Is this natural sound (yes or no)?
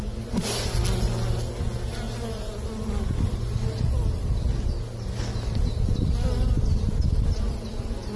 yes